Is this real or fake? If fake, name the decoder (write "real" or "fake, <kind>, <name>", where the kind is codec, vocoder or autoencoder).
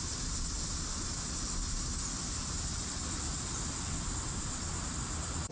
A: real